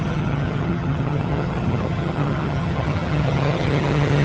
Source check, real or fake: fake